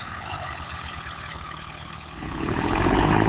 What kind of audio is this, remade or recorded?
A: remade